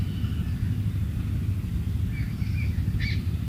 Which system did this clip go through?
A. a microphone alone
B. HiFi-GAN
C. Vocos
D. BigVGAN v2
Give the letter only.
A